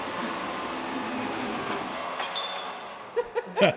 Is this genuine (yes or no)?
yes